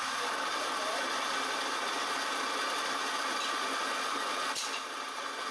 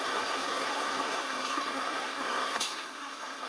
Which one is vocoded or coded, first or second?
second